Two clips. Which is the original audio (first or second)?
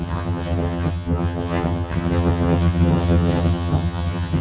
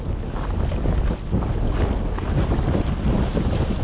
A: second